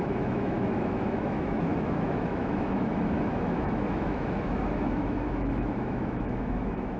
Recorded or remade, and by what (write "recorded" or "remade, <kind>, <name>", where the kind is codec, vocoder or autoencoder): remade, autoencoder, DAC-VAE